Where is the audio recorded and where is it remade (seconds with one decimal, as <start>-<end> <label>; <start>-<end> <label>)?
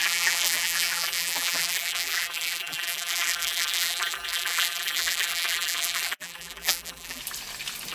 0.0-7.2 remade; 7.2-7.9 recorded